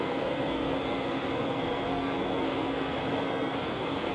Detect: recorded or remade remade